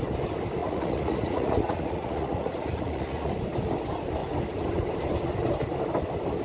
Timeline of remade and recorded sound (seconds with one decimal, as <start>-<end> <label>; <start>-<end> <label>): 0.0-0.6 recorded; 0.6-3.3 remade; 3.3-6.4 recorded

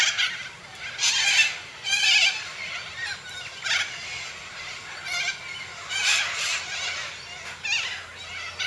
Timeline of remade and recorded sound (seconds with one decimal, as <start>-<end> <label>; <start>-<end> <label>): 0.0-8.7 recorded

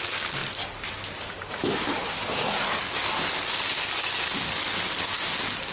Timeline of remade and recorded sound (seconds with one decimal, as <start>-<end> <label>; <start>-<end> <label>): 0.0-5.7 recorded

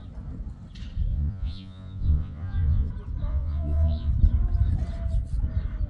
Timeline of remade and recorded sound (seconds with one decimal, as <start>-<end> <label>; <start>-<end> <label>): 0.0-1.1 recorded; 1.1-2.9 remade; 2.9-3.3 recorded; 3.3-4.1 remade; 4.1-5.9 recorded

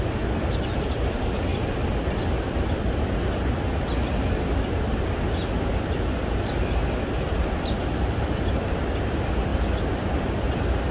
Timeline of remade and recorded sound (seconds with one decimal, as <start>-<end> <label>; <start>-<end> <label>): 0.0-10.9 recorded

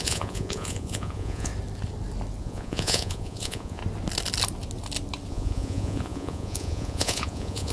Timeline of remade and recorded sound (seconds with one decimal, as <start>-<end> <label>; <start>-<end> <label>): 0.0-1.5 remade; 1.5-2.4 recorded; 2.4-3.8 remade; 3.8-5.3 recorded; 5.3-7.7 remade

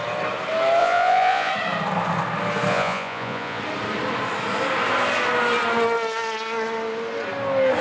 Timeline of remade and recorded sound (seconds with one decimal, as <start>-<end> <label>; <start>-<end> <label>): 0.0-0.8 recorded; 0.8-1.5 remade; 1.5-2.7 recorded; 2.7-3.6 remade; 3.6-7.8 recorded

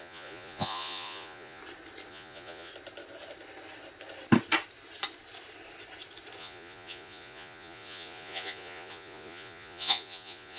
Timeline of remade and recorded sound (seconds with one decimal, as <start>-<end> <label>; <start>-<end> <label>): 0.0-1.6 remade; 1.6-2.1 recorded; 2.1-2.7 remade; 2.7-6.4 recorded; 6.4-10.6 remade